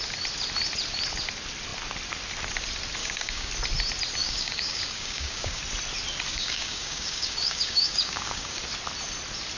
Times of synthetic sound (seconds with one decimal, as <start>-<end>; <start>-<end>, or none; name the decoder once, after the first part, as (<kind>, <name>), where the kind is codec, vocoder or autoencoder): 3.0-3.5 (codec, DAC); 4.2-5.6; 6.3-8.6

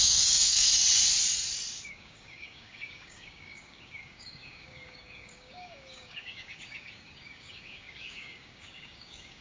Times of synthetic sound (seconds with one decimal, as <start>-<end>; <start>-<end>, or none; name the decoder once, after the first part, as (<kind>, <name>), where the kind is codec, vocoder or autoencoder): 0.0-0.7 (codec, DAC); 1.8-9.4

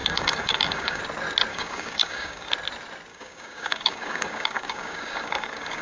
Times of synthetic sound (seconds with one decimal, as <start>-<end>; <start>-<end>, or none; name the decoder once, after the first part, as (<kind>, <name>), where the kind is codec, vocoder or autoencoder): 0.0-1.0 (codec, DAC); 1.5-2.5; 3.1-5.8

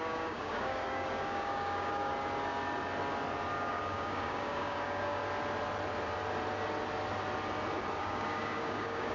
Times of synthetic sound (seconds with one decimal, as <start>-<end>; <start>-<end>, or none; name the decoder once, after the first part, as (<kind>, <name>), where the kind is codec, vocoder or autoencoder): 0.0-2.1 (codec, DAC); 3.5-5.2; 8.0-9.1

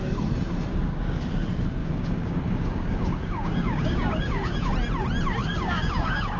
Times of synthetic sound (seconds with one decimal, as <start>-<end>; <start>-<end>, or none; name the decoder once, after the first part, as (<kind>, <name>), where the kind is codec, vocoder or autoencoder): 0.7-1.2 (codec, DAC); 1.8-4.7; 5.4-6.4